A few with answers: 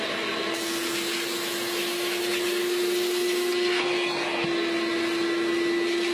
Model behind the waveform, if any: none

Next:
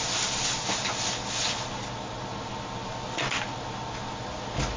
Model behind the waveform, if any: none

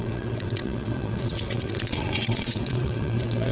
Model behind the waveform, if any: vocoder, WaveNeXt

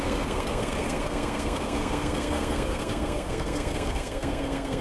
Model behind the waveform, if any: codec, SNAC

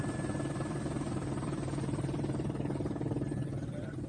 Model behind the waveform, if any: vocoder, BigVGAN v2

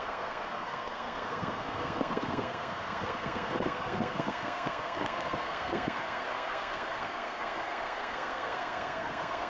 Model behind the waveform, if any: codec, SNAC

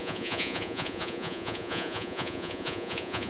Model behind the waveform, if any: vocoder, Vocos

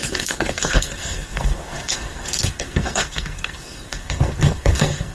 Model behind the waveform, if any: codec, SNAC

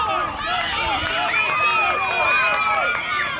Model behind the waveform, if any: none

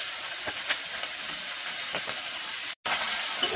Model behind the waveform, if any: none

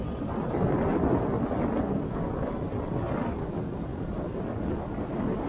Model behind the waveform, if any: none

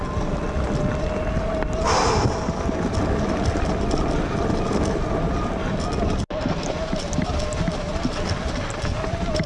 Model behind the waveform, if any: none